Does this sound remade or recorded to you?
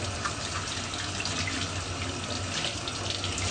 recorded